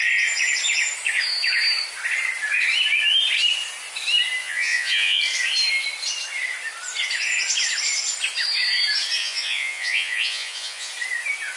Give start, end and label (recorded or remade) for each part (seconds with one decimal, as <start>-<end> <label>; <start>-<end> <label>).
0.0-4.4 recorded; 4.4-5.2 remade; 5.2-9.2 recorded; 9.2-10.9 remade; 10.9-11.6 recorded